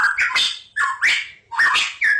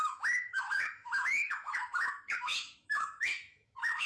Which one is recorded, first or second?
first